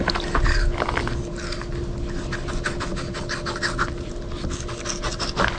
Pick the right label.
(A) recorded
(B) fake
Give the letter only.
A